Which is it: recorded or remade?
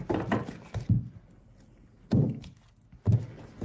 recorded